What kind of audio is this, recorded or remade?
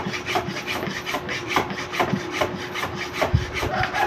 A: remade